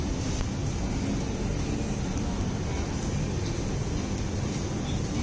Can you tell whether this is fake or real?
real